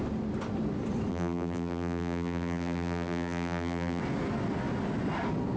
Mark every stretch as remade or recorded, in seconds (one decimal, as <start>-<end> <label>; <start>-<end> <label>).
0.0-1.1 recorded; 1.1-4.0 remade; 4.0-5.6 recorded